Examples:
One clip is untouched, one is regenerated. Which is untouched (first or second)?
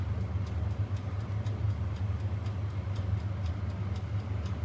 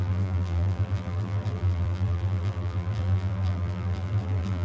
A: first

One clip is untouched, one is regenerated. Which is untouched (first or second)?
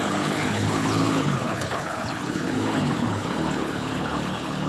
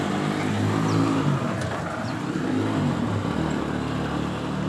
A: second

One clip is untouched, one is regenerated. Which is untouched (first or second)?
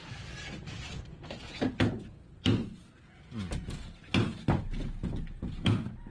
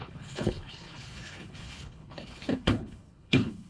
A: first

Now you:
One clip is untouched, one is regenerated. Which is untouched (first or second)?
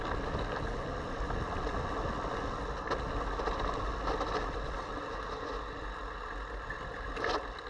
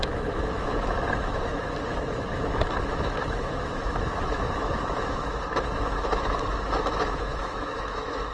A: first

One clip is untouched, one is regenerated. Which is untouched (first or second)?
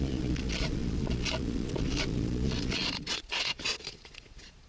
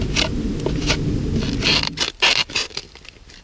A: second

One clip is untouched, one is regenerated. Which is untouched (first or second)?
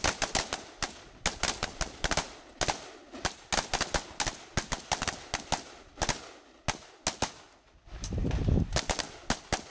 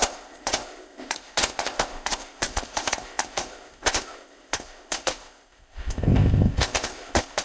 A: first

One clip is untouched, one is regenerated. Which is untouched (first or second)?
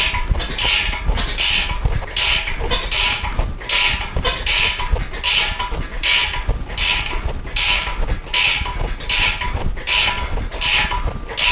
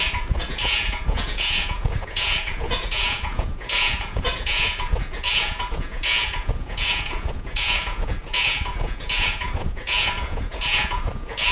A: first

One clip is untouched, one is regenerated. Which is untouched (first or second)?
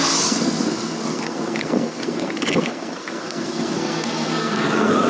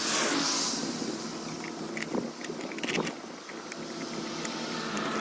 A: second